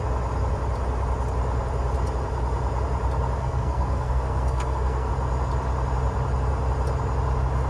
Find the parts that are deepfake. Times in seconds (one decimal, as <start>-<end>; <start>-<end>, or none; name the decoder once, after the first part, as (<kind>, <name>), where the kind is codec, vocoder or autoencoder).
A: 3.4-5.1 (codec, SNAC)